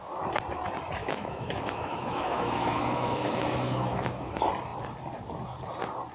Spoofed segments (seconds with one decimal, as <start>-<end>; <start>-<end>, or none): 1.0-4.3